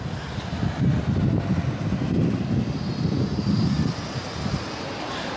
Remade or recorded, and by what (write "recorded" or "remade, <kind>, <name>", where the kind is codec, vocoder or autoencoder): recorded